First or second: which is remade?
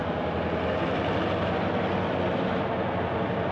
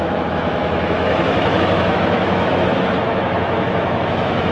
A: second